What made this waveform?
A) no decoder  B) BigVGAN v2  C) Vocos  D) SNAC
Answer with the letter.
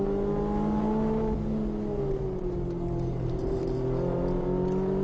A